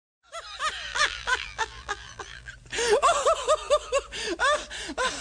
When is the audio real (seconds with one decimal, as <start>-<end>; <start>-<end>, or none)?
0.0-0.9; 2.5-5.2